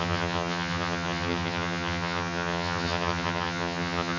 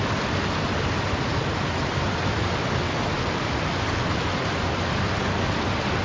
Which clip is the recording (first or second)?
second